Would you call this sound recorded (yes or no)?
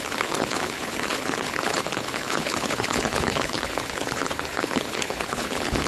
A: no